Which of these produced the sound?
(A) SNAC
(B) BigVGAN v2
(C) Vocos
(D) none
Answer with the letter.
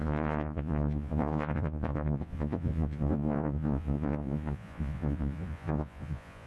C